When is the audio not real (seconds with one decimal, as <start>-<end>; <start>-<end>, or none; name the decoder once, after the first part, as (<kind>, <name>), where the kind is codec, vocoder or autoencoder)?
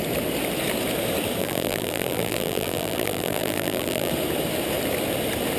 1.4-4.1 (vocoder, BigVGAN v2)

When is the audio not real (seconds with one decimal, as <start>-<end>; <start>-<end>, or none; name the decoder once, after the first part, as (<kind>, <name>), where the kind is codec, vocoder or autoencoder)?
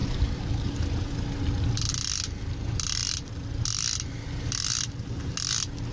3.0-3.5 (vocoder, BigVGAN v2)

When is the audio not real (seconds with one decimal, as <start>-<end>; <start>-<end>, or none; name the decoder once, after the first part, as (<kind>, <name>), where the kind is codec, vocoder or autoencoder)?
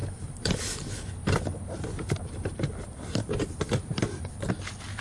0.0-0.9 (vocoder, BigVGAN v2); 1.5-4.5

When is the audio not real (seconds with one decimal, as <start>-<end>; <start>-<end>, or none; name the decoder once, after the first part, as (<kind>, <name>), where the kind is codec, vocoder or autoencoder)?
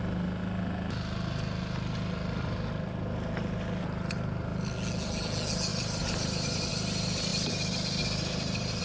5.7-6.7 (vocoder, BigVGAN v2)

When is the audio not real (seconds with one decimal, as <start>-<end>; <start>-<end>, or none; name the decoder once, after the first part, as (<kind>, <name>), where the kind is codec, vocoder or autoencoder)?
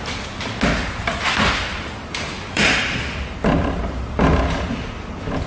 0.8-4.1 (vocoder, BigVGAN v2)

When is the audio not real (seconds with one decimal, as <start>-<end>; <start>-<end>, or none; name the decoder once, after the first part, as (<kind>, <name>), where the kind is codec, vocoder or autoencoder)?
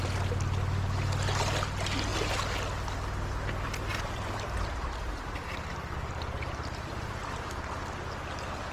3.9-4.6 (vocoder, BigVGAN v2); 5.0-8.1